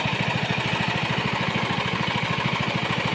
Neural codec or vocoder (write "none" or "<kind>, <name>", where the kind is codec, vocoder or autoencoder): none